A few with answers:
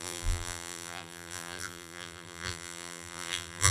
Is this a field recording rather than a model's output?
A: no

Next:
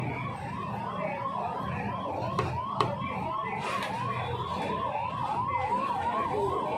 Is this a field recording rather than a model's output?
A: yes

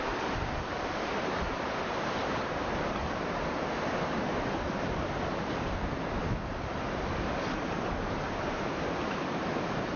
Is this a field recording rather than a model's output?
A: no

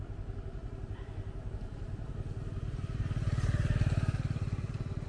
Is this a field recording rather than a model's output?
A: yes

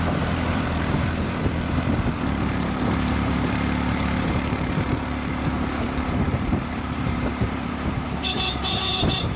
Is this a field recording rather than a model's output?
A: no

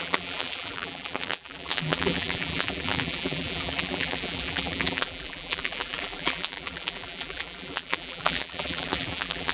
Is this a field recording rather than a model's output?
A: no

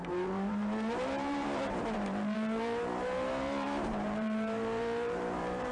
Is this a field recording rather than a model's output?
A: no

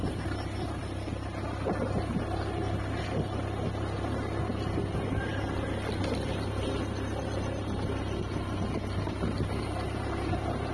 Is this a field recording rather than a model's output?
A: yes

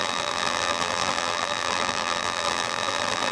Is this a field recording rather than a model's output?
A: no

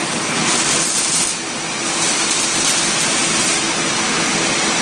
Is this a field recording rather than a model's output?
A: yes